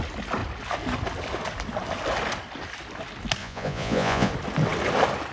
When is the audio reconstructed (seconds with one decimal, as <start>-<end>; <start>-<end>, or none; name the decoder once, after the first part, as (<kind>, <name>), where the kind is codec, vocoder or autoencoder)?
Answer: 3.4-4.3 (vocoder, Vocos)

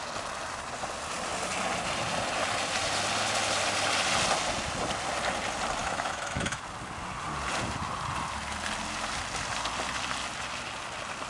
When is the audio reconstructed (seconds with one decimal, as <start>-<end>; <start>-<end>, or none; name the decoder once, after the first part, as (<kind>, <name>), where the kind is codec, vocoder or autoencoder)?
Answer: 5.8-6.6 (autoencoder, DAC-VAE)

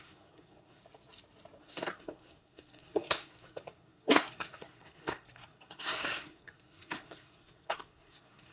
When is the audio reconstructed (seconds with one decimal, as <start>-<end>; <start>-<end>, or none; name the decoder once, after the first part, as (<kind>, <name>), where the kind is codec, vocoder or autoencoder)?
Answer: 0.0-0.8 (codec, SNAC); 1.6-8.5

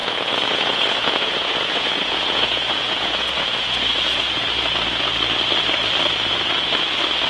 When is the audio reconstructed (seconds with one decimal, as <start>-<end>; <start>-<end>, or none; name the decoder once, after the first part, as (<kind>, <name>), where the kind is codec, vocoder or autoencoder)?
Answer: 0.0-4.4 (vocoder, Vocos)

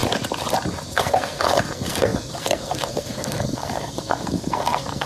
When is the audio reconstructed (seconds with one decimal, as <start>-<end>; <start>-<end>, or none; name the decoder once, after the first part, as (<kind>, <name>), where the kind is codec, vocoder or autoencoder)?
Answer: 0.9-5.1 (codec, SNAC)

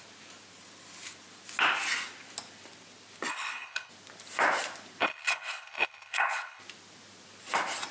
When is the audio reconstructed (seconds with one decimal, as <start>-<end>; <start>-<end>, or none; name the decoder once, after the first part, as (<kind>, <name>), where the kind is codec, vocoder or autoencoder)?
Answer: 3.3-3.9 (codec, HILCodec); 5.0-6.6